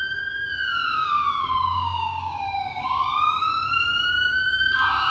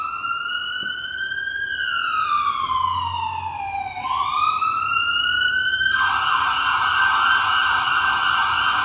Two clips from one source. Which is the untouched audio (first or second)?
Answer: second